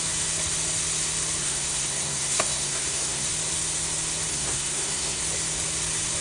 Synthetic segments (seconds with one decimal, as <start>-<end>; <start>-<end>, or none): 1.4-3.3; 4.3-5.2